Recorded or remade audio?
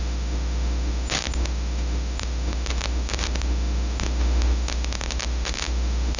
remade